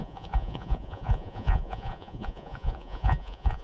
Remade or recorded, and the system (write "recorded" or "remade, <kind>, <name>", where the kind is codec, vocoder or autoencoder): remade, vocoder, Vocos